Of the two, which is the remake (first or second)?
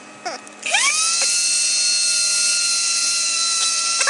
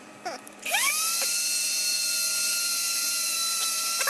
second